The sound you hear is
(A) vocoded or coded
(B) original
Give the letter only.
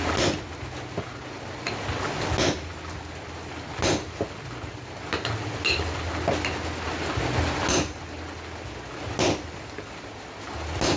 B